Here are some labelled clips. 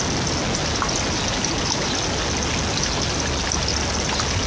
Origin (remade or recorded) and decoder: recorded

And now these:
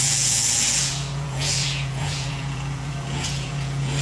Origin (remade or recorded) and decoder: remade, vocoder, Vocos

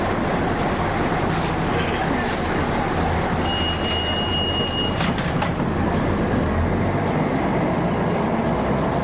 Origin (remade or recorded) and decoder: recorded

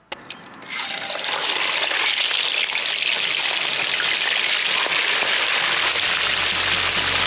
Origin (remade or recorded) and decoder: recorded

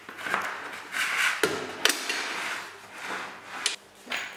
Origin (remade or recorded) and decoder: recorded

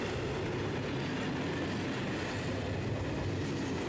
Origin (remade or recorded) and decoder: recorded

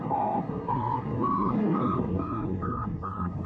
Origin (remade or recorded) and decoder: remade, codec, SNAC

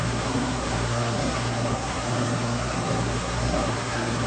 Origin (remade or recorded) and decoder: remade, codec, SNAC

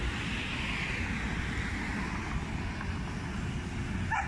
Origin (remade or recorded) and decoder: recorded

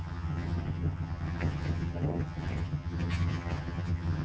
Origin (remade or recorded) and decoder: remade, vocoder, HiFi-GAN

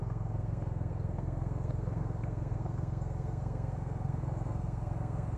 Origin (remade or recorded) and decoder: remade, codec, SNAC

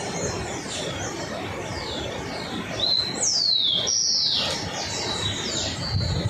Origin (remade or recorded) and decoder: recorded